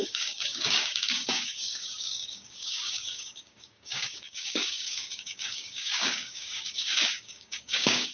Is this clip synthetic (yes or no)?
yes